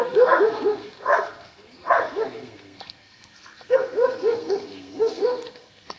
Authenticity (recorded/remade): remade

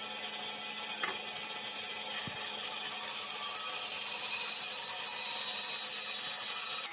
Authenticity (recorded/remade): recorded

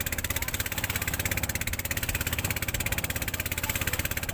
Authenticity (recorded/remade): recorded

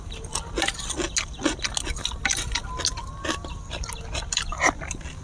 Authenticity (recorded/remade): recorded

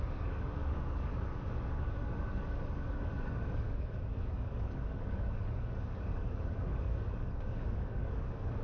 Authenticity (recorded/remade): remade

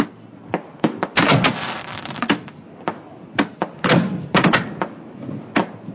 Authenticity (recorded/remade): recorded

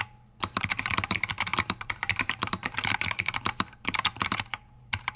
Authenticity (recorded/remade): remade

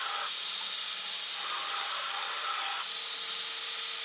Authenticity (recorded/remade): recorded